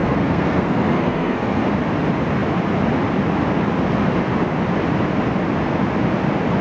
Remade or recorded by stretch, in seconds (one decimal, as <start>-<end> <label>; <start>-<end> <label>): 0.0-1.6 remade; 1.6-6.6 recorded